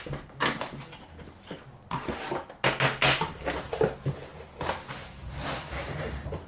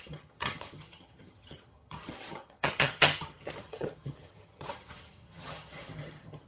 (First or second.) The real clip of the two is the first